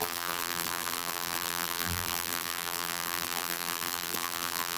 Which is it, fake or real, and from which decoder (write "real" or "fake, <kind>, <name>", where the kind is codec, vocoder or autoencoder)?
fake, vocoder, BigVGAN v2